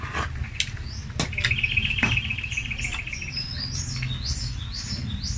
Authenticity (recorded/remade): recorded